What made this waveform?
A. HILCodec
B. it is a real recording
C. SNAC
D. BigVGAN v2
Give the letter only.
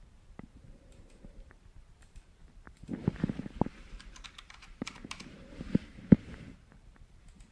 D